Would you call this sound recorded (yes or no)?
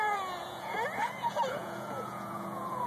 no